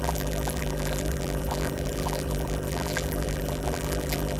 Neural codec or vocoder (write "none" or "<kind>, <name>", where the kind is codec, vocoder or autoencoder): vocoder, BigVGAN v2